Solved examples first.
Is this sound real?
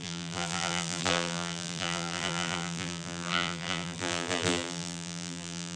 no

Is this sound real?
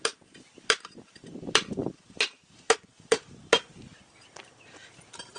no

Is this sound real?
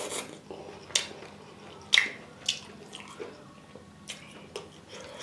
yes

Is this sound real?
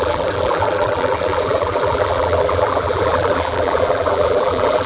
no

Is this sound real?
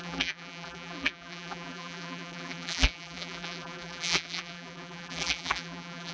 no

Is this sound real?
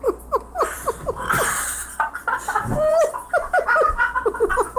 no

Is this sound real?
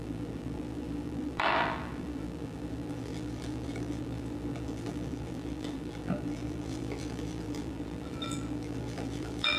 no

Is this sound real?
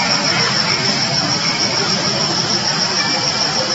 no